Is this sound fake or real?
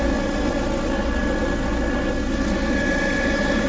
real